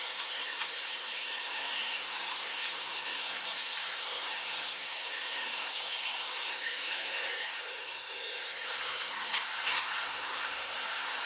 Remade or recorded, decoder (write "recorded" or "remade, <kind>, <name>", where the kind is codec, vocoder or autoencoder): remade, codec, SNAC